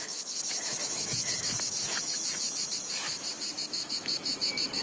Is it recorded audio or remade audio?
remade